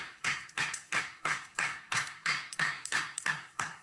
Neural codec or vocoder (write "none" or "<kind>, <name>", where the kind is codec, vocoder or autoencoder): codec, SNAC